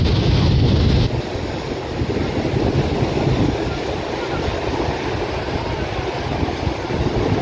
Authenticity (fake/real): real